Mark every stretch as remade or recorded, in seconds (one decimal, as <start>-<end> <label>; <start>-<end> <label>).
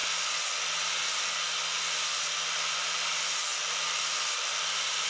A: 0.0-5.1 recorded